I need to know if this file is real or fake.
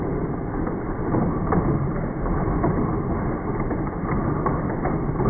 real